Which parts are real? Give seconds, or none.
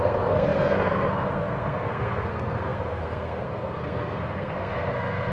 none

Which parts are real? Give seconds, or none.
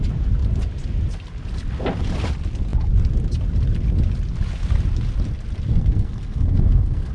0.0-5.7